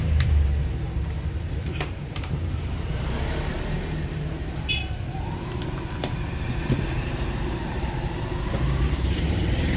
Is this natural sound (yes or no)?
no